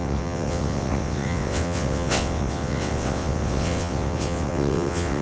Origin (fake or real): fake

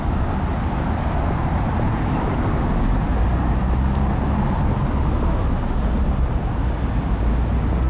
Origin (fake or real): real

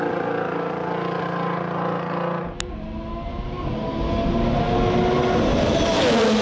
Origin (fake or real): real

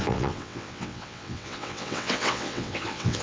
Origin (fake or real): fake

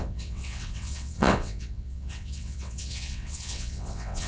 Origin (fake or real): fake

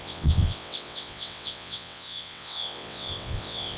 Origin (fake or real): fake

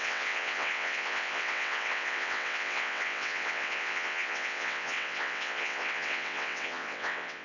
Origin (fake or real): fake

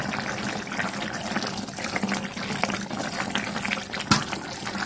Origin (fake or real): real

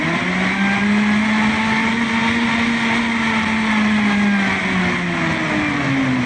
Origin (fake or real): real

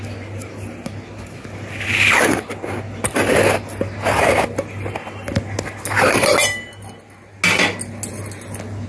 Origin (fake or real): real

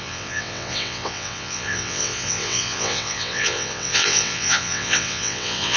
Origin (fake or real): fake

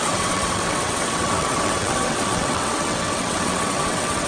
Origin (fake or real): fake